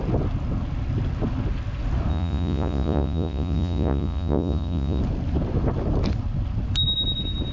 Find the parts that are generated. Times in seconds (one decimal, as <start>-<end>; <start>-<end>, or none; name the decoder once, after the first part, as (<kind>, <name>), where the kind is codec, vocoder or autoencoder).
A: 2.1-5.0 (vocoder, Vocos)